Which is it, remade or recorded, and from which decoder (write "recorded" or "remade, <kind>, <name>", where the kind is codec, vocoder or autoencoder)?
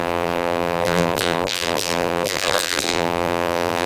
remade, vocoder, BigVGAN v2